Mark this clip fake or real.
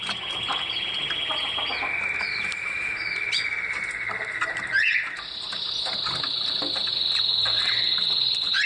real